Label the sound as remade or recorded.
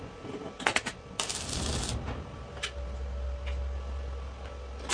recorded